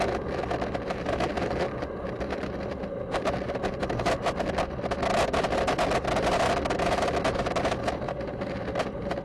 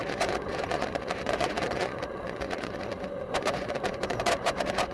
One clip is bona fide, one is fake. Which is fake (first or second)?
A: second